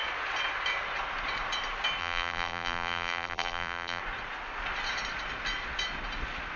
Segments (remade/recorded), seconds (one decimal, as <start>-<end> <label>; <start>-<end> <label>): 0.0-2.0 recorded; 2.0-4.0 remade; 4.0-6.6 recorded